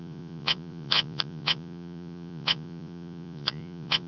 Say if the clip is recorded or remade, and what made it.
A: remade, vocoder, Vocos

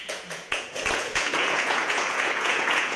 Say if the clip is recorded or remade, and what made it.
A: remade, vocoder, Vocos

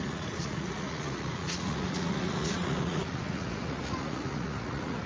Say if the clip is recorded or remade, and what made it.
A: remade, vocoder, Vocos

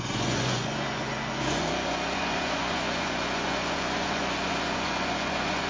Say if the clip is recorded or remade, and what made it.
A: remade, vocoder, Vocos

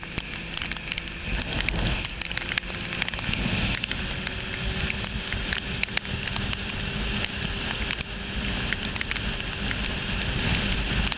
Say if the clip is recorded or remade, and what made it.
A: recorded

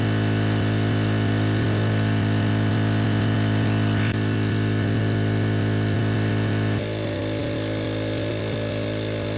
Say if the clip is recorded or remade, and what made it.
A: recorded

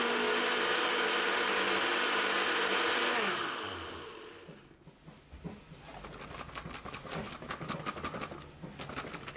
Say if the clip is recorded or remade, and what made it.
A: recorded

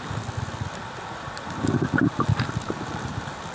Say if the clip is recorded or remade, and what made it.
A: recorded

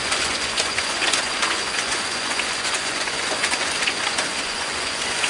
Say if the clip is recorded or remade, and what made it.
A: remade, vocoder, Vocos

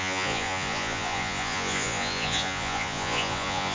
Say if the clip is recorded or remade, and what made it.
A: remade, vocoder, Vocos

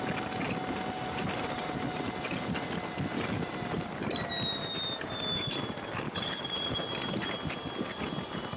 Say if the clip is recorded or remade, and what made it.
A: recorded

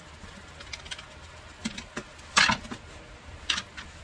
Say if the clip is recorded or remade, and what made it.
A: recorded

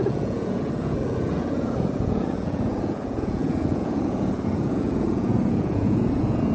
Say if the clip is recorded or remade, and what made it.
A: remade, vocoder, Vocos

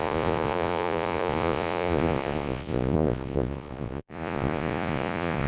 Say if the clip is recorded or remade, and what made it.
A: remade, vocoder, Vocos